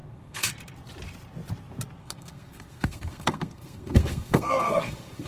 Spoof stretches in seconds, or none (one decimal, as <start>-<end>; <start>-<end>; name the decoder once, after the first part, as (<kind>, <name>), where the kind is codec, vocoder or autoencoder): 0.0-0.5 (codec, SNAC); 2.0-5.3